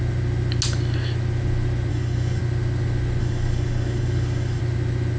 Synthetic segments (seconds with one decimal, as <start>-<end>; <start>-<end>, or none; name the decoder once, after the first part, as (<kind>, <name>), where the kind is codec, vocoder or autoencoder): 1.9-2.4 (codec, DAC); 3.2-4.6